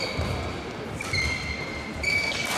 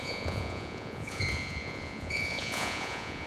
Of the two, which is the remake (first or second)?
second